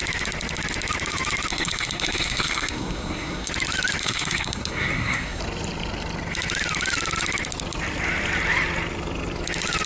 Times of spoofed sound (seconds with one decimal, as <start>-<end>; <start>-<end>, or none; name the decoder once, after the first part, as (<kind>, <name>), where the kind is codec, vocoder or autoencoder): 1.5-3.5 (codec, SNAC); 4.0-5.4

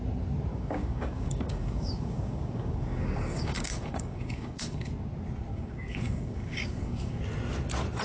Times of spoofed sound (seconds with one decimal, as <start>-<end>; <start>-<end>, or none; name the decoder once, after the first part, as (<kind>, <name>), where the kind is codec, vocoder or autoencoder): 0.5-4.9 (codec, DAC); 5.5-7.2

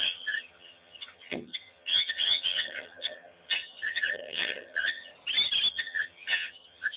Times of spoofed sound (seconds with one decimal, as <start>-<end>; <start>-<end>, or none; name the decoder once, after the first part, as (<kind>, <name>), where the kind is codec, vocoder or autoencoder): 0.0-5.1 (vocoder, HiFi-GAN); 5.7-7.0

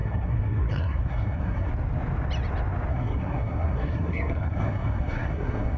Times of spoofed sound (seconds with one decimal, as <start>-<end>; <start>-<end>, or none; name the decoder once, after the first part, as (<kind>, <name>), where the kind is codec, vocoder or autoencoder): 0.0-1.7 (codec, SNAC); 2.9-5.8

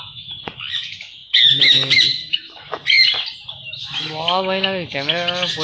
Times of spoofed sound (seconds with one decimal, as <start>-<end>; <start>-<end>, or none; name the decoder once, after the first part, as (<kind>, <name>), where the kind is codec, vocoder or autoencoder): 0.0-2.8 (autoencoder, DAC-VAE); 3.7-5.6